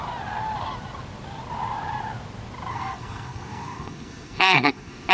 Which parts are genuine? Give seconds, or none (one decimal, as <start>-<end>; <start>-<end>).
0.0-2.7

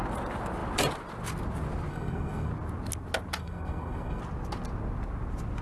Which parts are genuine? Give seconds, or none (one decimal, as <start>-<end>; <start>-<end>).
0.0-1.9; 2.5-3.4; 4.2-5.6

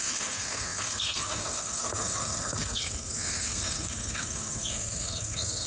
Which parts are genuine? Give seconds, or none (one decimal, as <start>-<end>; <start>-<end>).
none

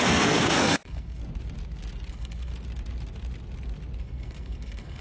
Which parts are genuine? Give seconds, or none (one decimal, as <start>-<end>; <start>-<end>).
1.2-2.1; 2.5-4.0

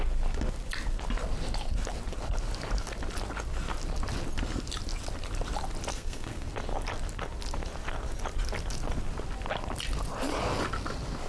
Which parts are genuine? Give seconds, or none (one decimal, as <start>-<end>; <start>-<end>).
0.0-5.9; 6.5-11.3

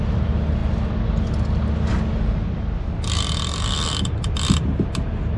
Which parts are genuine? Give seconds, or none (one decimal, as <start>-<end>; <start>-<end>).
0.0-5.4